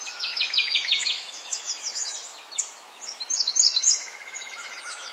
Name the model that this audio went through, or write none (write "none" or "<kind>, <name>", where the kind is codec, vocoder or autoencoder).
autoencoder, DAC-VAE